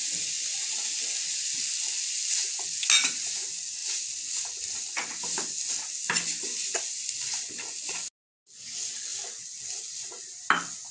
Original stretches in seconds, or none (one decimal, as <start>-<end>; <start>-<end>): 0.0-10.9